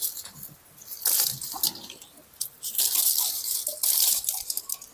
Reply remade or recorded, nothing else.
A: recorded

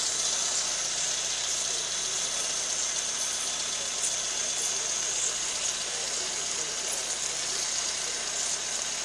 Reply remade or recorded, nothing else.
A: recorded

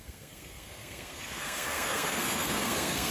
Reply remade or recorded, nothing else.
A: remade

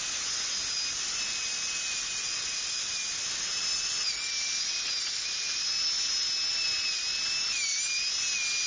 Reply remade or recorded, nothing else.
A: recorded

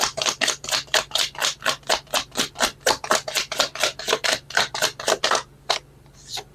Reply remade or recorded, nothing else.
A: remade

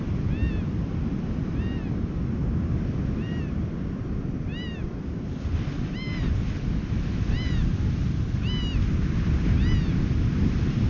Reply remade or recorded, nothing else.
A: recorded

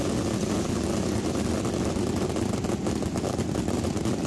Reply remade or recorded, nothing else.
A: recorded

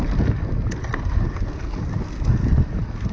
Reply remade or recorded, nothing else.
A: recorded